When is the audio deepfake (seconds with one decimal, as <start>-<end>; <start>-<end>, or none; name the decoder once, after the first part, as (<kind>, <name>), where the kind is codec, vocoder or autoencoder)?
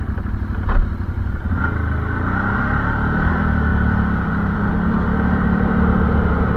3.7-6.1 (vocoder, BigVGAN v2)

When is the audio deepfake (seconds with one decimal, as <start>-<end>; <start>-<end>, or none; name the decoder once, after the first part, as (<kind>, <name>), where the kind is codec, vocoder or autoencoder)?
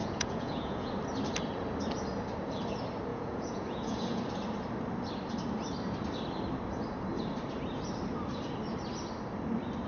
0.0-0.9 (vocoder, Vocos); 3.1-4.2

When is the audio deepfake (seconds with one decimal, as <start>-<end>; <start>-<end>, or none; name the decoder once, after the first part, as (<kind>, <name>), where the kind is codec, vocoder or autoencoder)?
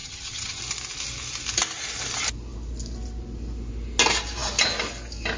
0.0-0.6 (vocoder, HiFi-GAN)